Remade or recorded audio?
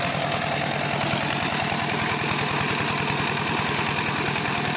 recorded